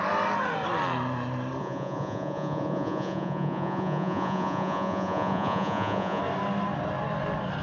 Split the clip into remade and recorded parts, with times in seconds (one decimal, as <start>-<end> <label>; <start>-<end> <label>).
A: 0.0-1.6 recorded; 1.6-6.2 remade; 6.2-7.6 recorded